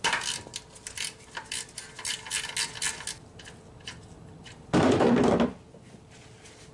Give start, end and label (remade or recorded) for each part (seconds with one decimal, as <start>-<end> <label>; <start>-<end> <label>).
0.0-6.7 recorded